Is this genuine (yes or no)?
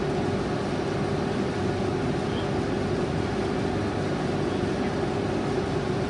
yes